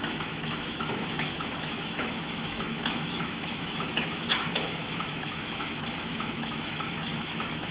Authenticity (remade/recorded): remade